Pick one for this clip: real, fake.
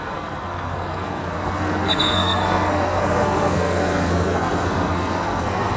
fake